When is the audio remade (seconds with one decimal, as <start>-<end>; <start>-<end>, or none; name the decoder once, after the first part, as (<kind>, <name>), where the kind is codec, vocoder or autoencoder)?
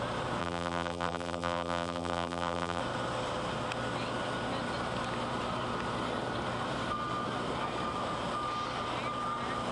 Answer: 0.4-2.8 (vocoder, BigVGAN v2)